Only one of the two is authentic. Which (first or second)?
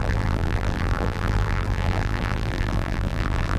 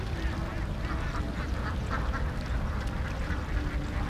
second